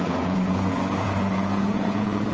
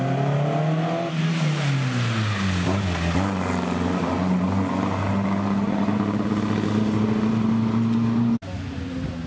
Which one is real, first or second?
second